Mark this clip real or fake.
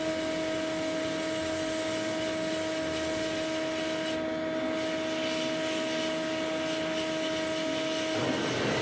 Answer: real